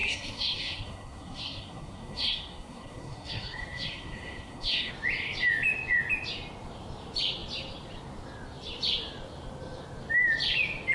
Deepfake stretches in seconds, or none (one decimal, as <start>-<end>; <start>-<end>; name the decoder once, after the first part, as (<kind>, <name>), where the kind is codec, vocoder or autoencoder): 0.0-4.9 (codec, SNAC)